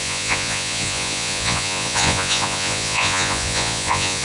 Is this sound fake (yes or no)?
yes